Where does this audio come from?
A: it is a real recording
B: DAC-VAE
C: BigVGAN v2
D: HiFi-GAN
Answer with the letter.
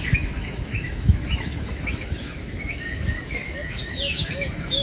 B